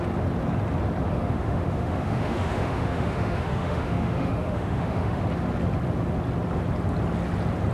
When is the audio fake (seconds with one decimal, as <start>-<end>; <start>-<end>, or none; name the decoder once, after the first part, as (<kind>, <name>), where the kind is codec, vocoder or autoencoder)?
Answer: 1.1-5.2 (autoencoder, DAC-VAE)